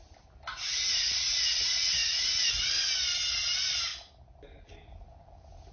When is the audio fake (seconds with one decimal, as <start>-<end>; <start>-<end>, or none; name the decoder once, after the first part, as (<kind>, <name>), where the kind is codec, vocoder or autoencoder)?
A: none